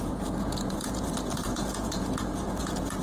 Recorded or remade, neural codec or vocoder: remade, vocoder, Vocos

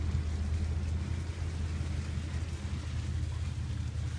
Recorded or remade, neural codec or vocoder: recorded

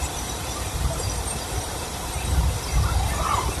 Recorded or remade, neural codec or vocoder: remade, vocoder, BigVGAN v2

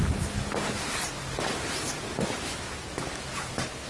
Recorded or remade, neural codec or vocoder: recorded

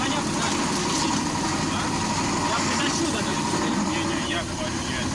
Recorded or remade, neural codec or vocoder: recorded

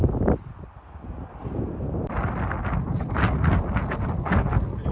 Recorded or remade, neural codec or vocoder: recorded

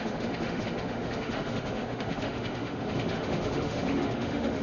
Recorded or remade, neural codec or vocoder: remade, autoencoder, DAC-VAE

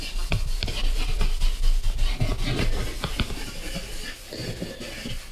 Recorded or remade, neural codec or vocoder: recorded